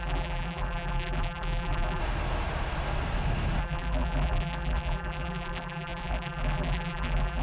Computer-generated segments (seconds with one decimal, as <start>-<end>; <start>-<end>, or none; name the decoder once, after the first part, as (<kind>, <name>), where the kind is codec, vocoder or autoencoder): 0.0-2.0 (vocoder, BigVGAN v2); 3.6-7.4

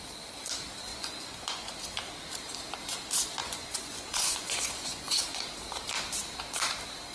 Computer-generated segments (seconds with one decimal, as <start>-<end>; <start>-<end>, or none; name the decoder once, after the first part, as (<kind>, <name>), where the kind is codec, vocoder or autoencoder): 0.9-1.7 (vocoder, Vocos); 3.4-5.2

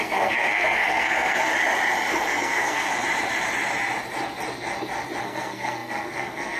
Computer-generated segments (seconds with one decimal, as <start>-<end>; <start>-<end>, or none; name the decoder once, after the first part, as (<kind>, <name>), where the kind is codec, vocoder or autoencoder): 0.0-1.5 (codec, SNAC); 2.1-2.9; 5.2-6.6

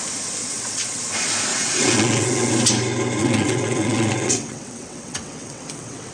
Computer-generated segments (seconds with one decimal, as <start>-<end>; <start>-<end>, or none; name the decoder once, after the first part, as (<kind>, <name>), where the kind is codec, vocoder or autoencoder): 0.4-1.0 (vocoder, WaveNeXt); 1.5-2.5; 3.2-6.1

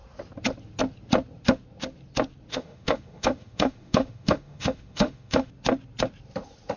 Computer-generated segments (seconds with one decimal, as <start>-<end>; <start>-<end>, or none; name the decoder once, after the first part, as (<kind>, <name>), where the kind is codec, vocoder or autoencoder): 2.5-5.5 (autoencoder, DAC-VAE)

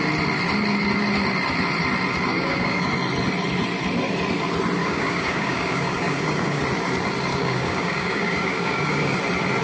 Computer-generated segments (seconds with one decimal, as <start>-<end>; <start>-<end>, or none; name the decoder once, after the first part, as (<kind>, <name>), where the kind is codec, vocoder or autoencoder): 2.3-2.9 (codec, DAC); 4.8-6.6; 7.3-9.2

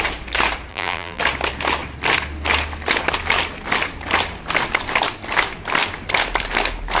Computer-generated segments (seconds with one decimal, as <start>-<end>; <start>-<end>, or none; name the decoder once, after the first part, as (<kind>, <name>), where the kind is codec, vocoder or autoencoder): 0.7-1.2 (vocoder, BigVGAN v2)

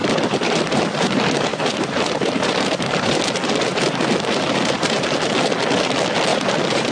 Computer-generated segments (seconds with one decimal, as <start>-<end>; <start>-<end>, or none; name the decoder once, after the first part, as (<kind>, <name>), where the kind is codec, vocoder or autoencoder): 0.0-1.1 (vocoder, BigVGAN v2); 1.5-3.2; 3.7-5.3; 6.3-6.9